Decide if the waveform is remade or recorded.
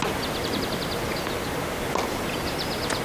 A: recorded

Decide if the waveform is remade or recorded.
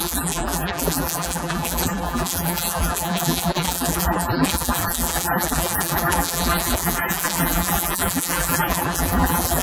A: remade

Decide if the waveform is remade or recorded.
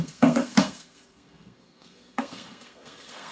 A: remade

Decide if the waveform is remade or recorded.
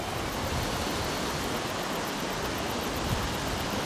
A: remade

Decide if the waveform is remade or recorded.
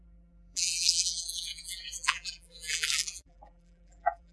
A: remade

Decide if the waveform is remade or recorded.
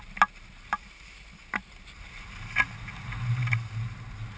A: recorded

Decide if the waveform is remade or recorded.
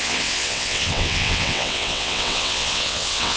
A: remade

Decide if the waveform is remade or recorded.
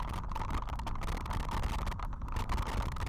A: recorded